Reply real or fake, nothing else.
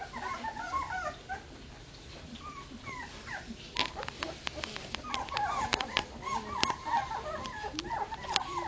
fake